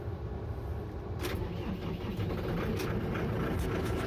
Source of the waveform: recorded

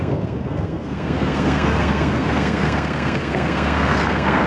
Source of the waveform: remade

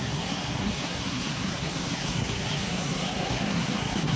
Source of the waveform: remade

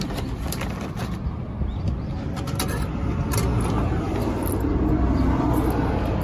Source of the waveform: recorded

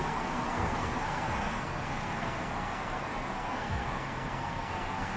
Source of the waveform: remade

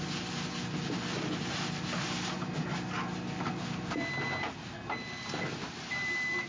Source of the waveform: recorded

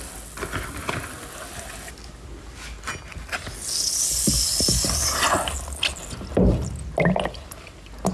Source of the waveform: recorded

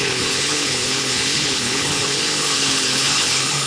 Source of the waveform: remade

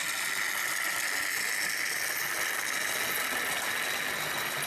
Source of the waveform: recorded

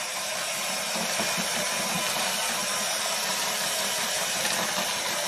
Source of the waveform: remade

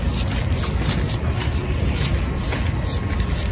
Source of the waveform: recorded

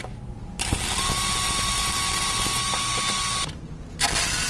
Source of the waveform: recorded